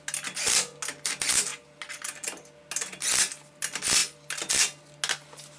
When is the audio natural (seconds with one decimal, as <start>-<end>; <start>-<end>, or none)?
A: 0.0-5.6